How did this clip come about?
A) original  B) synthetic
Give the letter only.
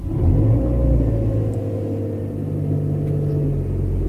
A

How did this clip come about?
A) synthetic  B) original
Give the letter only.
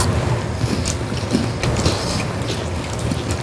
B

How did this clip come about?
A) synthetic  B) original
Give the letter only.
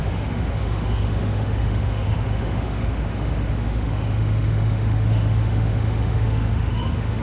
A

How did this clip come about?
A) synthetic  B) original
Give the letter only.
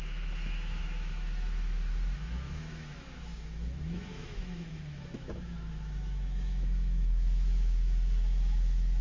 A